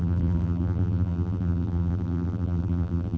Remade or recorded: remade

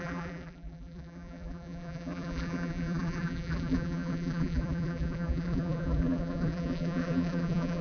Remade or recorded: remade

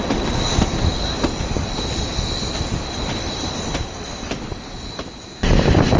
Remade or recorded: recorded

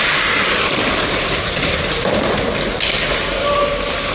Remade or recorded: remade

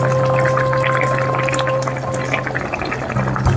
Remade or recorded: recorded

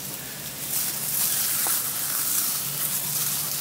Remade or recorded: recorded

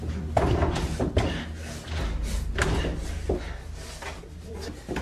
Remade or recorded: recorded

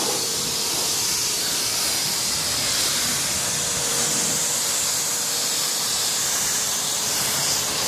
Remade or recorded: remade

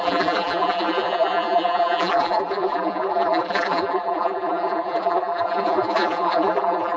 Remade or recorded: remade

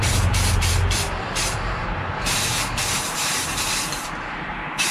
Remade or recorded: remade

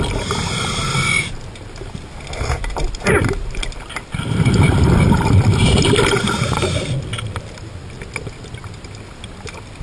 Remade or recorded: recorded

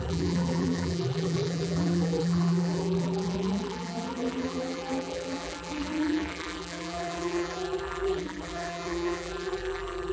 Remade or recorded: remade